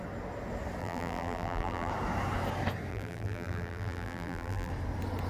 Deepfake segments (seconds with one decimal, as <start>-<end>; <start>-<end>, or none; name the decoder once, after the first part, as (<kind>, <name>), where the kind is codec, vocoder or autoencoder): 0.8-1.9 (vocoder, BigVGAN v2); 2.9-4.7